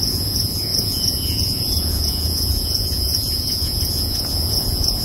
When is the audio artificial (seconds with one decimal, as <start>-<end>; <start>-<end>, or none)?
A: 0.0-5.0